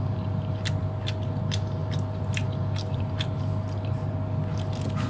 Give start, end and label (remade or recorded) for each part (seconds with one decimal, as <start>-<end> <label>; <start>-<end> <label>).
0.0-5.1 recorded